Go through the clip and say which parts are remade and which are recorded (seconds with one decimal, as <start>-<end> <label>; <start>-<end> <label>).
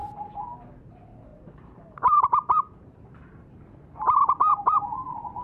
0.0-1.3 recorded; 1.3-3.6 remade; 3.6-4.5 recorded; 4.5-5.4 remade